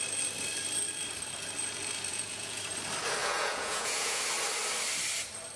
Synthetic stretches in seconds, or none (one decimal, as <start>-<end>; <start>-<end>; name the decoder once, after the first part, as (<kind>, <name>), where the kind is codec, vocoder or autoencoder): 2.1-2.6 (vocoder, Vocos); 3.2-4.2